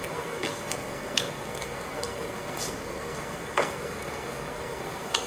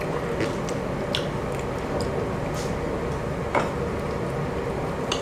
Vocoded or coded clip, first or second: first